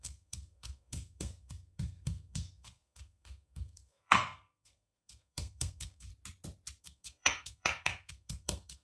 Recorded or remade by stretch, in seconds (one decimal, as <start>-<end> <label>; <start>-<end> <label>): 0.0-6.1 remade; 6.1-6.8 recorded; 6.8-8.8 remade

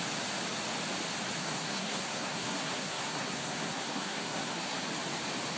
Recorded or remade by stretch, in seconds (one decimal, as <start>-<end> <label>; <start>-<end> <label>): 0.0-1.4 recorded; 1.4-4.8 remade; 4.8-5.6 recorded

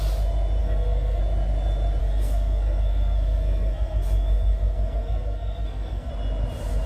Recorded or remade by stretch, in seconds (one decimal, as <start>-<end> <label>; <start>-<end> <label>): 0.0-0.6 recorded; 0.6-1.2 remade; 1.2-2.0 recorded; 2.0-6.1 remade; 6.1-6.9 recorded

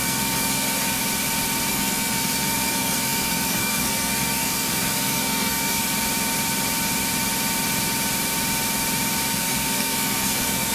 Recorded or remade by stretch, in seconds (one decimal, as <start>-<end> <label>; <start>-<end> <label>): 0.0-1.0 remade; 1.0-1.7 recorded; 1.7-5.8 remade; 5.8-9.3 recorded; 9.3-10.7 remade

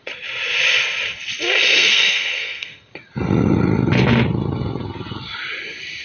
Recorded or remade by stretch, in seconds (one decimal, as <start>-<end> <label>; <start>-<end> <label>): 0.0-1.7 recorded; 1.7-2.9 remade; 2.9-6.0 recorded

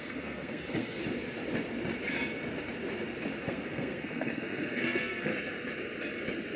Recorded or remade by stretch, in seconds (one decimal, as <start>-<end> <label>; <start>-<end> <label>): 0.0-1.0 remade; 1.0-3.4 recorded; 3.4-5.3 remade; 5.3-6.6 recorded

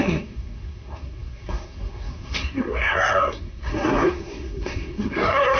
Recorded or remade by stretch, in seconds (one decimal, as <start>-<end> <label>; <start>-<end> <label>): 0.0-5.6 remade